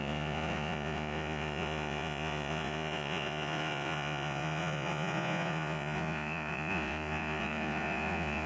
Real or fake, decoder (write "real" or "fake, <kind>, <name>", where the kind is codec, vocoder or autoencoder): fake, vocoder, Vocos